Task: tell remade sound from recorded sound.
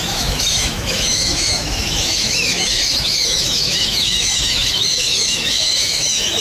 remade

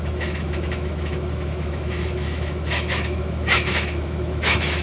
remade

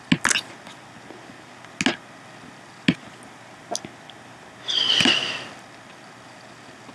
recorded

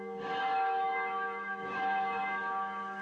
remade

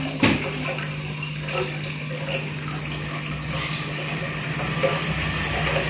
recorded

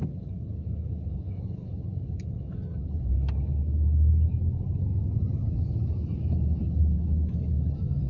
remade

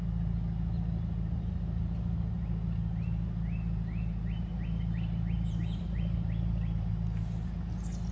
recorded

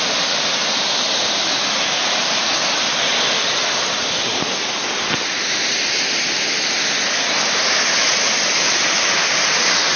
recorded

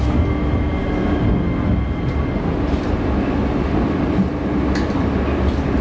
recorded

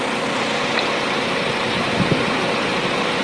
recorded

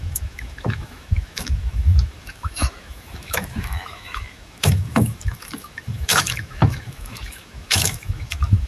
remade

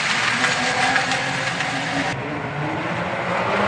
recorded